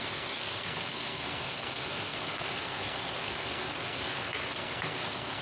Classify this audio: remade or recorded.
remade